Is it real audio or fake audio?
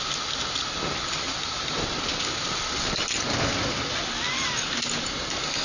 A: real